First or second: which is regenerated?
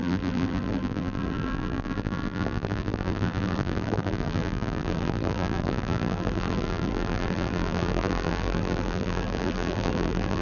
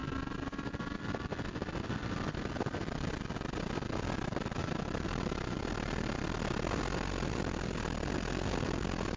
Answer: first